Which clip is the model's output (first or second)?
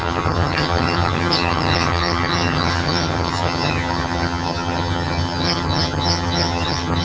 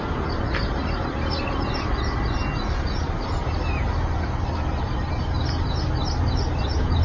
first